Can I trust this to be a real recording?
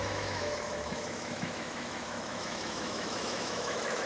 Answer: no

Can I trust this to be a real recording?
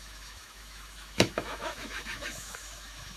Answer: no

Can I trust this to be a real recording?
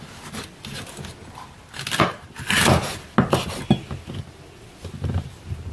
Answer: yes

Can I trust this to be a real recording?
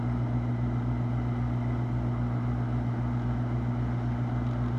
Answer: yes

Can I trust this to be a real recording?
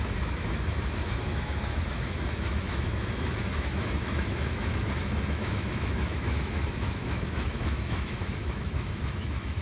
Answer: no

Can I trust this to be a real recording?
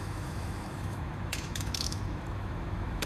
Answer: no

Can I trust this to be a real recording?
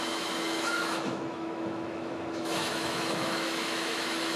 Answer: no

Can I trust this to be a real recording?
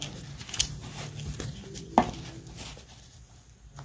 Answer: yes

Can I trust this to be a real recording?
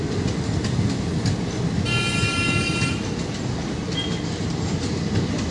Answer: yes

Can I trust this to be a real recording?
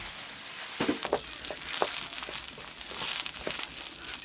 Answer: yes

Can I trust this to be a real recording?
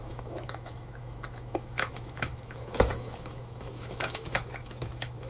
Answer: no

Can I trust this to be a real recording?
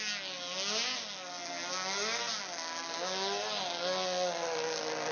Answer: yes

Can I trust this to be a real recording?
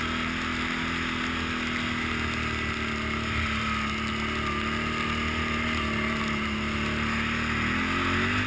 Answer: yes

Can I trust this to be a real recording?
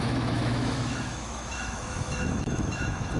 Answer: no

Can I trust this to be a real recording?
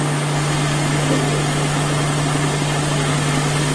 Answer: yes